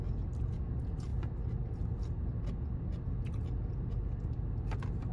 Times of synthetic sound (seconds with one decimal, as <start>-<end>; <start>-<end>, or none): none